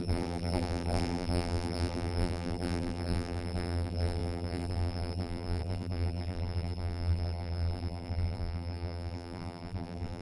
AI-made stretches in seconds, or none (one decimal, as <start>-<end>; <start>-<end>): 0.0-10.2